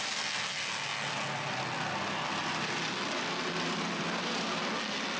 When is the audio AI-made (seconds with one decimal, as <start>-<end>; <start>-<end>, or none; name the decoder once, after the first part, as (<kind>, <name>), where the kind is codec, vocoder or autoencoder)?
none